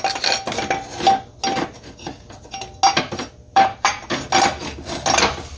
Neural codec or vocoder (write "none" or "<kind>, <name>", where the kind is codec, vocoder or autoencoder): none